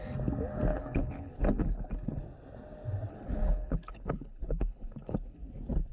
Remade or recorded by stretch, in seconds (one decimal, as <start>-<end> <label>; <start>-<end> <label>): 0.0-0.7 recorded; 0.7-2.2 remade; 2.2-3.1 recorded; 3.1-5.4 remade; 5.4-5.9 recorded